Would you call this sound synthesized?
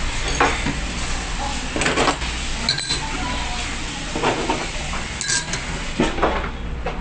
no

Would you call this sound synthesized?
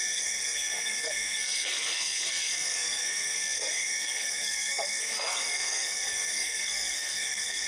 yes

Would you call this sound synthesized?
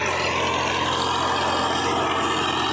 no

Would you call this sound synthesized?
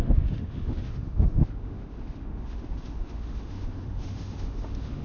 yes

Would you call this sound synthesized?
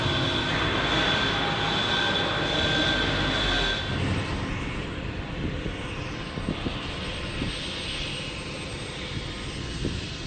no